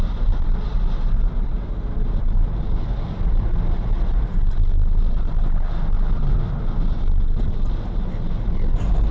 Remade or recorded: recorded